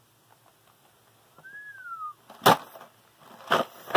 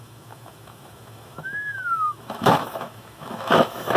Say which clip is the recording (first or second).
first